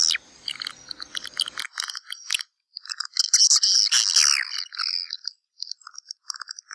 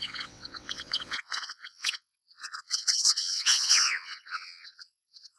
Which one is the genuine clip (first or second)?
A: first